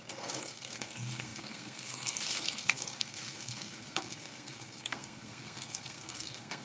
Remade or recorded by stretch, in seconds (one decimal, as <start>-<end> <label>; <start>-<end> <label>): 0.0-6.6 remade